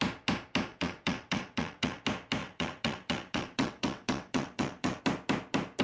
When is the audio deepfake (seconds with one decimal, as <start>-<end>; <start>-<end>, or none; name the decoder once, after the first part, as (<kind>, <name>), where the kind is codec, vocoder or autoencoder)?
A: 0.7-2.0 (vocoder, WaveNeXt); 2.4-5.0